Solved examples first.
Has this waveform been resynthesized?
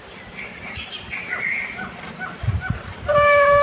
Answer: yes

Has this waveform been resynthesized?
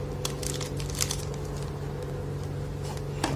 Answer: no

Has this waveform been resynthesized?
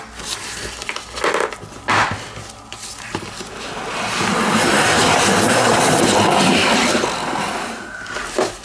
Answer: no